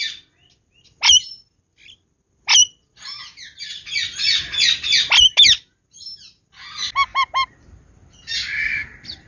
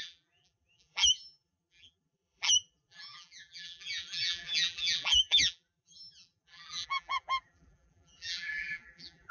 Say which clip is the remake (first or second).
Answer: second